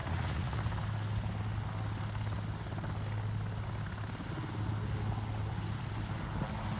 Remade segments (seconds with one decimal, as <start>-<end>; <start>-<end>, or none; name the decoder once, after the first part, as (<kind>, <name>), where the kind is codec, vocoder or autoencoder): 0.0-0.6 (vocoder, Vocos)